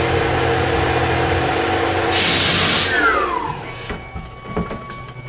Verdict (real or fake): real